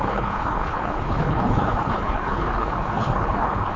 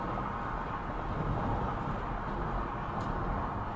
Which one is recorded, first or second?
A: second